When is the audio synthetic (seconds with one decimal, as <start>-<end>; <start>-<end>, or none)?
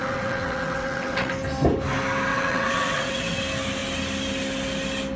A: 0.0-1.3; 2.3-3.4